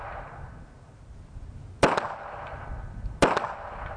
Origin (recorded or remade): recorded